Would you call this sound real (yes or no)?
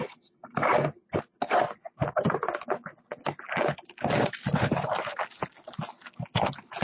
yes